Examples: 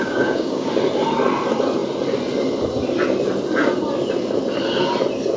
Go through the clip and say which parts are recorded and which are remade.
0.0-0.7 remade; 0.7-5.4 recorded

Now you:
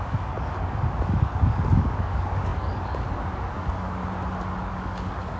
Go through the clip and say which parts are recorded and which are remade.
0.0-4.0 remade; 4.0-4.6 recorded; 4.6-5.4 remade

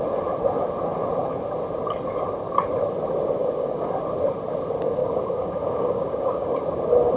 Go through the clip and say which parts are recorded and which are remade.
0.0-3.4 recorded; 3.4-3.9 remade; 3.9-5.0 recorded; 5.0-6.6 remade; 6.6-7.2 recorded

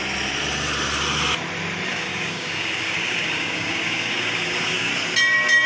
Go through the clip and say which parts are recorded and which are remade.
0.0-1.9 recorded; 1.9-4.9 remade; 4.9-5.7 recorded

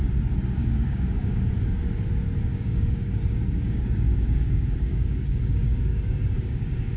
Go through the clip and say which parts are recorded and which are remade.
0.0-0.6 recorded; 0.6-1.5 remade; 1.5-2.5 recorded; 2.5-7.0 remade

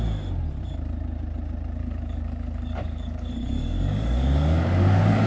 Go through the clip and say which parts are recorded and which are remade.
0.0-1.8 recorded; 1.8-5.3 remade